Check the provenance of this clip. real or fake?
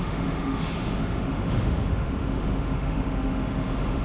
fake